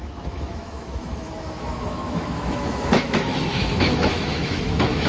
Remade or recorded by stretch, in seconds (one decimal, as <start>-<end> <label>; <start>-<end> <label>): 0.0-5.1 remade